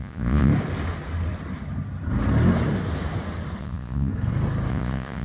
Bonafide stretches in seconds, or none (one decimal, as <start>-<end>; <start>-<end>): 0.5-3.6; 4.1-4.7